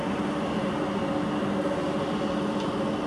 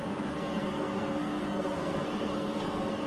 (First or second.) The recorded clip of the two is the first